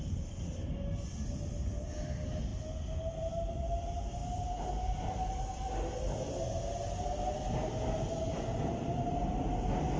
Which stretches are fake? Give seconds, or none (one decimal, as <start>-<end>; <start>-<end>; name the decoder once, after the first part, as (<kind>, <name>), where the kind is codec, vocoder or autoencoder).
none